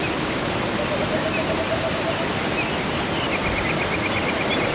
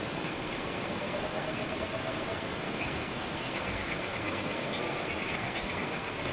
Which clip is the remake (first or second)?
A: second